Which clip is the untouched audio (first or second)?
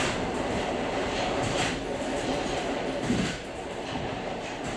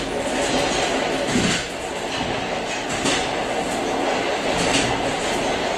second